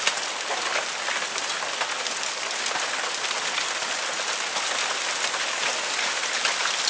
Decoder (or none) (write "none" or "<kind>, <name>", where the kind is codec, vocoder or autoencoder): none